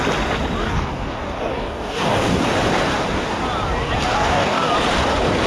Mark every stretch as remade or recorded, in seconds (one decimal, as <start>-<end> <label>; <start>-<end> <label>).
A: 0.0-0.6 recorded; 0.6-2.4 remade; 2.4-4.1 recorded; 4.1-4.7 remade; 4.7-5.5 recorded